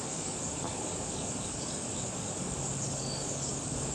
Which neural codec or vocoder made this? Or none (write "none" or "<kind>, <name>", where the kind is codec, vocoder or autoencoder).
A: codec, DAC